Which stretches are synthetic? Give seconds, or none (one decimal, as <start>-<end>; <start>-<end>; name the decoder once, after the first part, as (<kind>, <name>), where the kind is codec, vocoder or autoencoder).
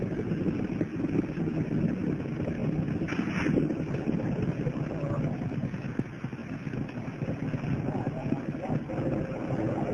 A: none